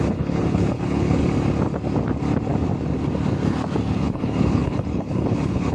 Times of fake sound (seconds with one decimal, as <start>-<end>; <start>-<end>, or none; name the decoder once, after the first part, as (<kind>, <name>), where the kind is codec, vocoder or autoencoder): 0.0-1.2 (codec, HILCodec); 4.0-5.7